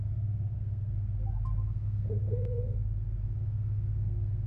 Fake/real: fake